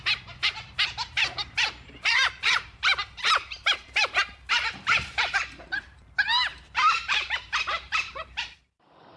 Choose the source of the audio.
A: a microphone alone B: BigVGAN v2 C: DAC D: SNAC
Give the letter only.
B